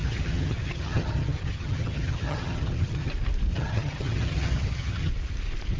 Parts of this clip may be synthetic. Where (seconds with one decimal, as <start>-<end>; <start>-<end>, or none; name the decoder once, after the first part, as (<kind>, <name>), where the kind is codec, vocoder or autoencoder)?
0.0-3.1 (vocoder, HiFi-GAN); 3.5-5.1